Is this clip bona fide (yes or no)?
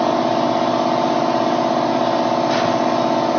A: yes